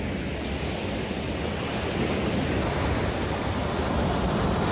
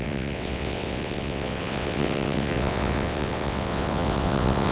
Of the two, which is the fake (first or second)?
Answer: second